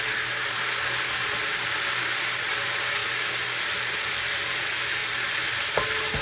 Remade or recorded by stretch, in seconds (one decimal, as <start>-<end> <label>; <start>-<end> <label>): 0.0-5.0 recorded; 5.0-5.6 remade; 5.6-6.2 recorded